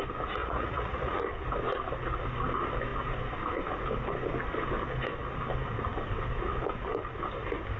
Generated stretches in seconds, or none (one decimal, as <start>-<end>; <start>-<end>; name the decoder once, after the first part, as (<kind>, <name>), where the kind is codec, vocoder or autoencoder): 0.4-1.2 (vocoder, Vocos)

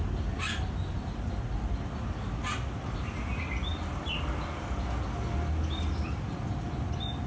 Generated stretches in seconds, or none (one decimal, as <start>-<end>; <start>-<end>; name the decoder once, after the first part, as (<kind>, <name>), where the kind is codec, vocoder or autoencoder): none

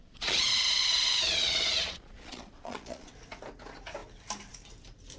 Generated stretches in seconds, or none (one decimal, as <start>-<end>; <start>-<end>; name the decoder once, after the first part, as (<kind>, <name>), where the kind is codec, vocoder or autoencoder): 0.0-3.1 (vocoder, Vocos)

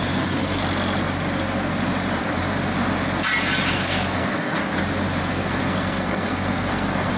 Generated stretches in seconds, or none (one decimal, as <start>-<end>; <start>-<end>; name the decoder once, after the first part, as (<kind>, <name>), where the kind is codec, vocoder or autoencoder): 0.0-0.6 (codec, SNAC); 3.7-4.6; 5.2-7.2

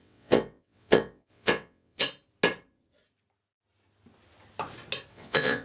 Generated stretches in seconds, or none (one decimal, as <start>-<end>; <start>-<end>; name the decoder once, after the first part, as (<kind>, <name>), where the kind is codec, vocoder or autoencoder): 0.0-2.0 (vocoder, WaveNeXt); 5.1-5.6